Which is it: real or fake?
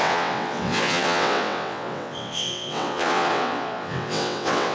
fake